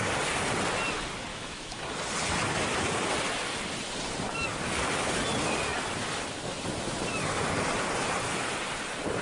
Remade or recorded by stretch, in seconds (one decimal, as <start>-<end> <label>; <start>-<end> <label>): 0.0-1.3 recorded; 1.3-1.8 remade; 1.8-9.2 recorded